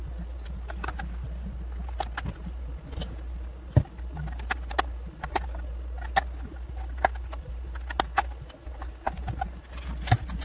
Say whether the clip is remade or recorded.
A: recorded